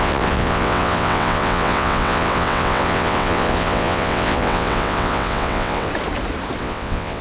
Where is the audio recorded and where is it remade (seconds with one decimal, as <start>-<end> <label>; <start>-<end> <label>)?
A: 0.0-5.9 remade; 5.9-6.6 recorded; 6.6-7.2 remade